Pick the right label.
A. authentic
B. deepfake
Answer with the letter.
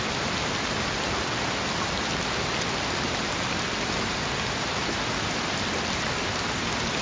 A